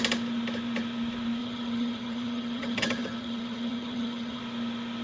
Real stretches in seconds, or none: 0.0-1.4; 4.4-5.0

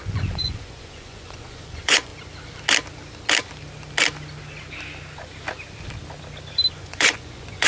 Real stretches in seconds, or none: 2.1-6.7

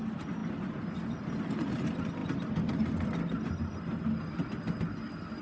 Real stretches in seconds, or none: 0.0-5.4

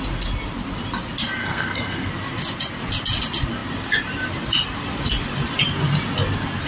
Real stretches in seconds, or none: 0.0-1.4; 2.1-6.7

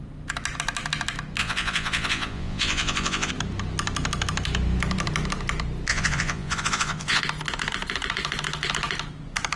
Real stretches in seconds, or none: 0.0-1.4; 3.3-5.9; 7.2-9.6

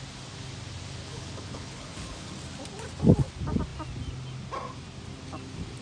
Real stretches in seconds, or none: 0.0-1.0; 2.3-5.8

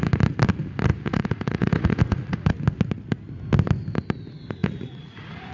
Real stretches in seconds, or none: 0.0-0.9; 2.5-4.6